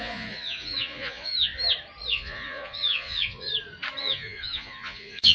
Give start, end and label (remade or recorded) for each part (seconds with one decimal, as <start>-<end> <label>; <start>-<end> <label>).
0.0-1.5 remade; 1.5-2.1 recorded; 2.1-3.5 remade; 3.5-4.0 recorded; 4.0-5.3 remade